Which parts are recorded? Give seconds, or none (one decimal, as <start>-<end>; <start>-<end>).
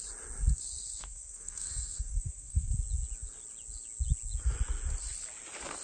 0.0-1.0; 2.7-5.8